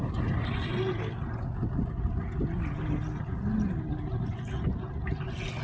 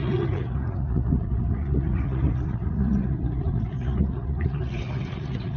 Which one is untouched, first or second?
first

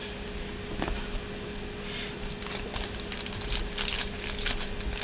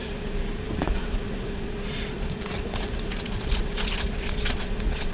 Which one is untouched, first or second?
first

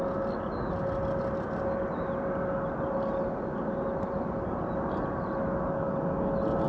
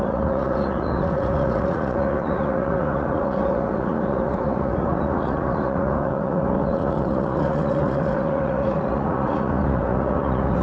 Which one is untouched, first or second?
first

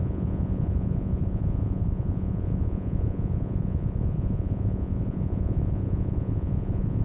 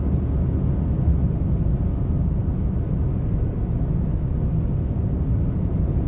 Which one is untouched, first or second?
second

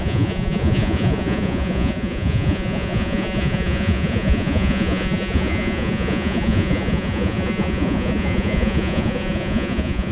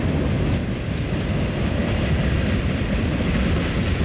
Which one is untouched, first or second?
second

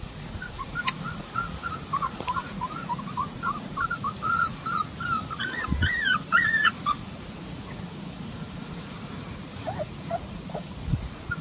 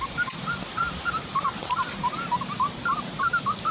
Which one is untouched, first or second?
second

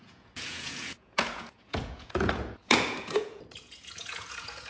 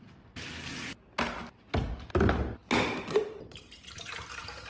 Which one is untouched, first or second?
second